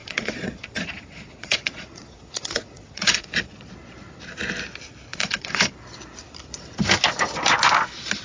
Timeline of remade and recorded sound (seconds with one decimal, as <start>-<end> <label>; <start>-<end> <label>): 0.0-3.7 remade; 3.7-5.1 recorded; 5.1-5.7 remade; 5.7-8.2 recorded